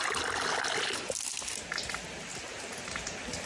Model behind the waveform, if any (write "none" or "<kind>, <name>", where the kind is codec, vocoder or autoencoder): none